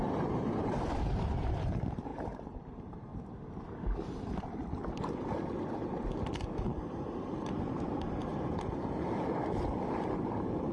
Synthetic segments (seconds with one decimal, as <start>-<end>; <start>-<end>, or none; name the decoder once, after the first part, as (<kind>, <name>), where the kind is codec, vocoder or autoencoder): 0.0-3.1 (vocoder, BigVGAN v2); 6.5-8.3